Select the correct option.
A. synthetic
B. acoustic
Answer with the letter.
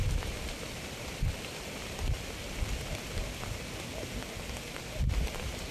B